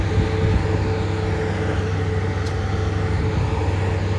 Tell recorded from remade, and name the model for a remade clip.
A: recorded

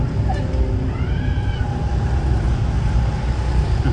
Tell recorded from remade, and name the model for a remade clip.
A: recorded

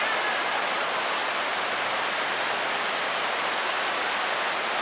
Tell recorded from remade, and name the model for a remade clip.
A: recorded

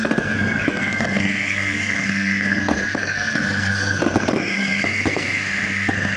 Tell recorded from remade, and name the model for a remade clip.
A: remade, codec, SNAC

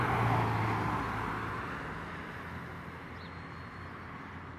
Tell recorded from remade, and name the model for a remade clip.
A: recorded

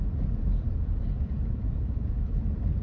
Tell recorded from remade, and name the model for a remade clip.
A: remade, vocoder, Vocos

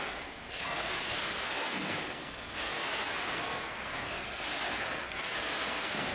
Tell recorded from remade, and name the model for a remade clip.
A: remade, codec, SNAC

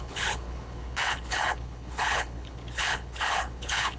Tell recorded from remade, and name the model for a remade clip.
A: remade, codec, HILCodec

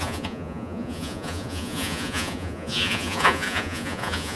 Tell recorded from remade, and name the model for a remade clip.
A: remade, vocoder, Vocos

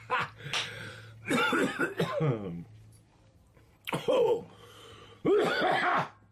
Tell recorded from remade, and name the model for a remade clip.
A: remade, vocoder, BigVGAN v2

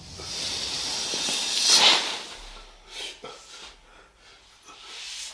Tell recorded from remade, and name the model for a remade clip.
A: recorded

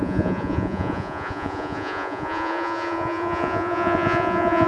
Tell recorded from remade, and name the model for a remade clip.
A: remade, vocoder, Vocos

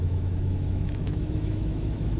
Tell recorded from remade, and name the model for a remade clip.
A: remade, autoencoder, DAC-VAE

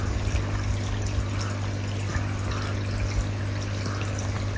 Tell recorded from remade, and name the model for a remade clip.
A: recorded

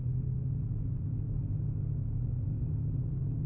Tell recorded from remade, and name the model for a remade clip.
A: recorded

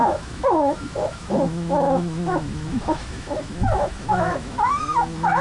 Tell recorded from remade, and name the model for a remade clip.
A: remade, autoencoder, DAC-VAE